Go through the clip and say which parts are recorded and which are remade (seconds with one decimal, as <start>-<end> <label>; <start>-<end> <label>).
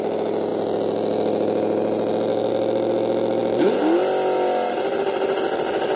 0.0-6.0 recorded